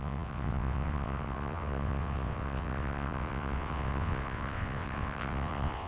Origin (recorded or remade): remade